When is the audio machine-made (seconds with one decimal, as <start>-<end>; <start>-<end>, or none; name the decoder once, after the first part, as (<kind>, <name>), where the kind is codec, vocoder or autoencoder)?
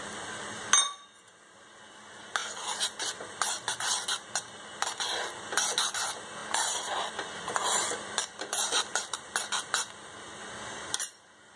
6.4-7.1 (vocoder, BigVGAN v2)